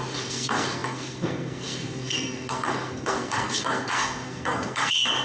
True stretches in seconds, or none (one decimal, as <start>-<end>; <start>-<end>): none